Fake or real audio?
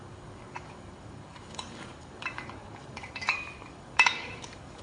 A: fake